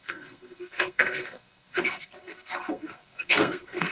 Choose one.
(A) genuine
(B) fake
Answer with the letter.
B